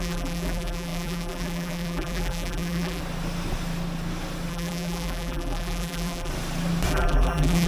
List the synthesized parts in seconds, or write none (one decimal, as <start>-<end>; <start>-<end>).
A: 0.0-3.0; 4.5-6.3; 6.9-7.7